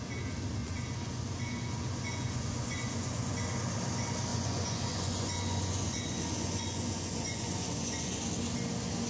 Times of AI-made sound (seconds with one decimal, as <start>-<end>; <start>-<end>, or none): 0.6-3.4; 4.3-8.2